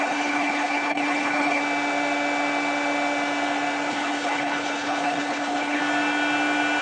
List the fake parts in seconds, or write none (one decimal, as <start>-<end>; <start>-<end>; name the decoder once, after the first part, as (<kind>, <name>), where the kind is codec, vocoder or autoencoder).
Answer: 0.0-1.6 (codec, HILCodec); 3.9-5.8